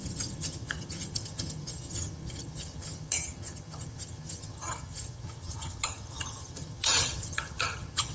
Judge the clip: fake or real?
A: fake